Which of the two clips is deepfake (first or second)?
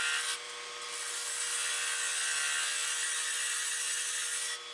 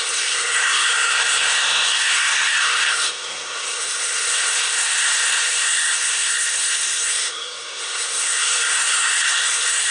second